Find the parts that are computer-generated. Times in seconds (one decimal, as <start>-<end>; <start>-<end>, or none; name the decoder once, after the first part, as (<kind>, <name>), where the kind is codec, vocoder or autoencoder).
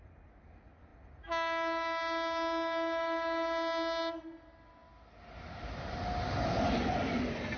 none